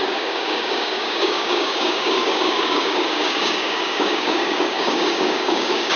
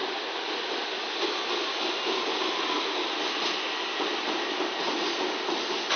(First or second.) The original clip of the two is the second